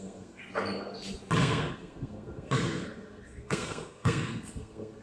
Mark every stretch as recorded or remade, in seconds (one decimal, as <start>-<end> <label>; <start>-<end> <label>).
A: 0.0-0.4 remade; 0.4-1.4 recorded; 1.4-5.0 remade